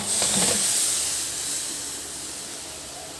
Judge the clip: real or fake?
real